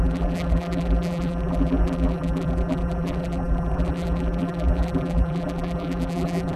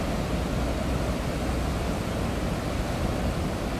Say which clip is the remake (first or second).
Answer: first